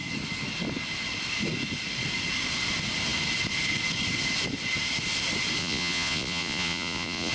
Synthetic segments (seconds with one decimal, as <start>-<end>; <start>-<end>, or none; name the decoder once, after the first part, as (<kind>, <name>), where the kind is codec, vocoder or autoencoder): 5.6-7.3 (vocoder, Vocos)